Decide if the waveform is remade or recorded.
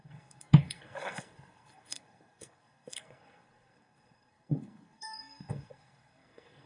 remade